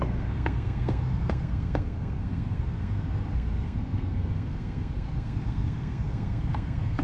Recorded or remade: remade